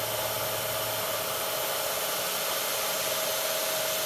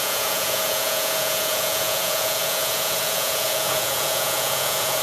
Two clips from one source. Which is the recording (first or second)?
first